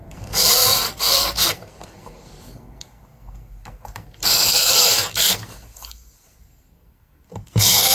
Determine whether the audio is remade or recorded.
remade